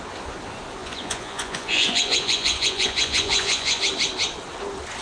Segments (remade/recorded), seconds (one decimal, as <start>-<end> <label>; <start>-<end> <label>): 0.0-0.8 recorded; 0.8-3.8 remade; 3.8-5.0 recorded